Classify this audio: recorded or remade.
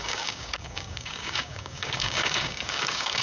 remade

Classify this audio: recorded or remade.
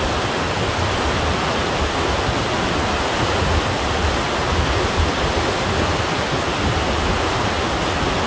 recorded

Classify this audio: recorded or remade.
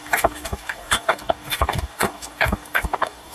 remade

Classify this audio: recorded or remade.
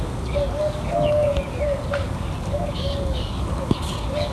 remade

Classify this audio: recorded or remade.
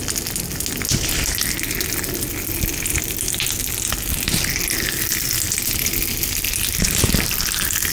recorded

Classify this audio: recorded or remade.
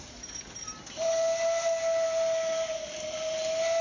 recorded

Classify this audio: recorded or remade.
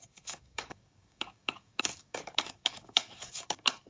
remade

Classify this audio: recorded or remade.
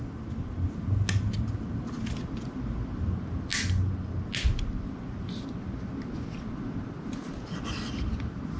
recorded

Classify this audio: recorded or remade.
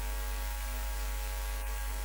remade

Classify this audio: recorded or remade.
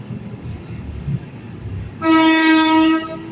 remade